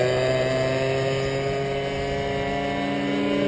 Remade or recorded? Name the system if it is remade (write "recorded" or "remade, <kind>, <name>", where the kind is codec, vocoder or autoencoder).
recorded